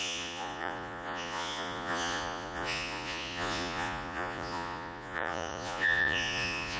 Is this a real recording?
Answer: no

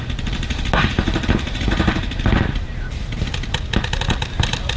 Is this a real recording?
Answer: yes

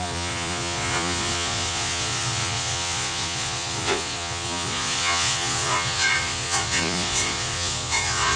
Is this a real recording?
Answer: no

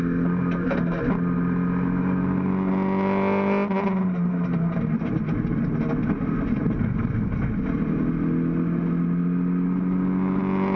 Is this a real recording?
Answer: yes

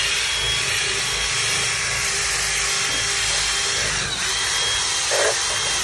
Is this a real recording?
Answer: yes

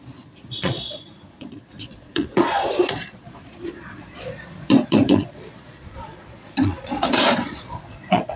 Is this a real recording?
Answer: no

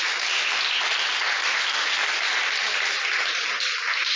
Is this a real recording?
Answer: yes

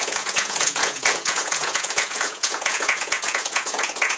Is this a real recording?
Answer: no